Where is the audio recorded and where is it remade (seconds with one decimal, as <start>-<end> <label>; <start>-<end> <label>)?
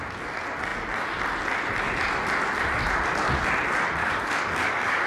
0.0-4.0 recorded; 4.0-5.1 remade